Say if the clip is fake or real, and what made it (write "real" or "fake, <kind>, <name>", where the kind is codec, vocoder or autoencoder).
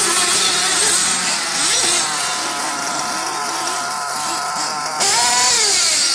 real